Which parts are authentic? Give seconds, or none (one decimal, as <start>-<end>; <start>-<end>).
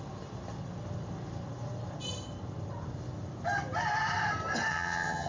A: 0.0-4.7